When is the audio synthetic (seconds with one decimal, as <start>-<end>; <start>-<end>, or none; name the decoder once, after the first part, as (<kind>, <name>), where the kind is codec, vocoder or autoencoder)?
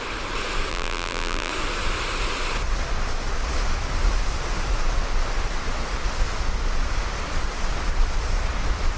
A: 0.7-1.5 (vocoder, BigVGAN v2)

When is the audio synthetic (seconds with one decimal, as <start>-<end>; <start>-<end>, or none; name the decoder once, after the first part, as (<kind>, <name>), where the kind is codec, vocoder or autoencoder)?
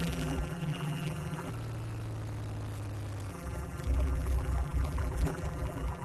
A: 0.0-1.5 (vocoder, BigVGAN v2); 3.3-6.0